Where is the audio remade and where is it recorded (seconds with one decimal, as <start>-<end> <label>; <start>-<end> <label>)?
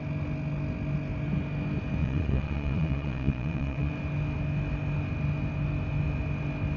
0.0-2.0 recorded; 2.0-3.9 remade; 3.9-6.8 recorded